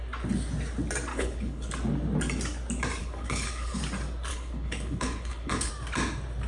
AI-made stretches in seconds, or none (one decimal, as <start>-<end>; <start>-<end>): 1.1-1.7; 3.0-3.8; 4.3-5.7